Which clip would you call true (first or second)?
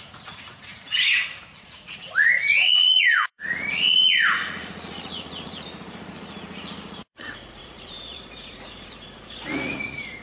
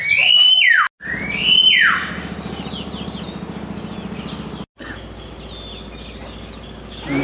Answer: second